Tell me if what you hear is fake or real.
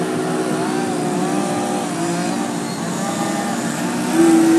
real